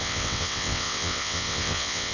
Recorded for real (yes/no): no